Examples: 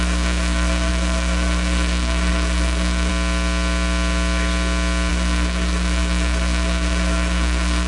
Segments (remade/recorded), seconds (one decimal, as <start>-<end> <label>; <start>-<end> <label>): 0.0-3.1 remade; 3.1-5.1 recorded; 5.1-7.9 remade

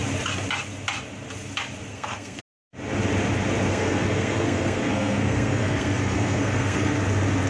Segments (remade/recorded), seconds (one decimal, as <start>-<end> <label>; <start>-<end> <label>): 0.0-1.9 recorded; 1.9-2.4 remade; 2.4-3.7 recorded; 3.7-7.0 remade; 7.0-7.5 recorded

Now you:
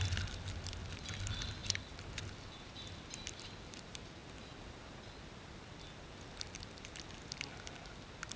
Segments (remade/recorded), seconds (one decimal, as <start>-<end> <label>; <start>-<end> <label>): 0.0-8.4 recorded

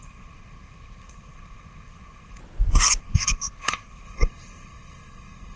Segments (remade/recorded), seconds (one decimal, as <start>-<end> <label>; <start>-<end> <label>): 0.0-2.4 remade; 2.4-3.0 recorded; 3.0-5.6 remade

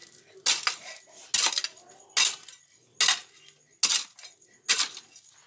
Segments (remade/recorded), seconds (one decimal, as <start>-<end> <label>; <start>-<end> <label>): 0.0-5.5 recorded